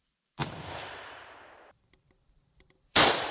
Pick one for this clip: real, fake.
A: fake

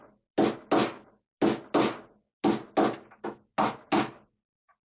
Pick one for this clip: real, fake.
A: real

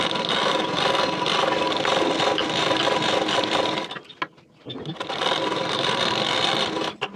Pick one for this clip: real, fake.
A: real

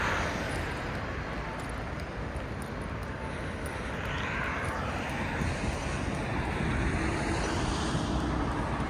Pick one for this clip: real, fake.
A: real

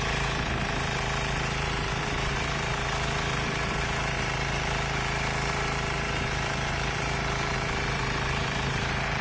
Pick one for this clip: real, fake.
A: fake